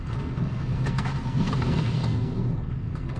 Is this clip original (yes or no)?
no